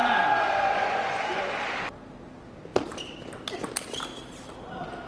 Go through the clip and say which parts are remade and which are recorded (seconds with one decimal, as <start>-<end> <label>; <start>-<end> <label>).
0.0-1.5 remade; 1.5-5.1 recorded